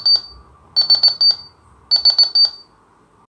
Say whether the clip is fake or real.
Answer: real